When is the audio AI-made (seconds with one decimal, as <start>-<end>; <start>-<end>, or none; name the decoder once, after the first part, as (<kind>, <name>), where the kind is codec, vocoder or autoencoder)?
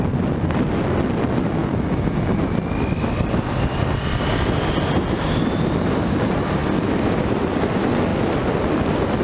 6.6-7.5 (vocoder, BigVGAN v2)